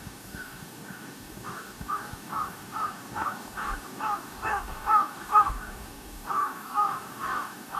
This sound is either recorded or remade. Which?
remade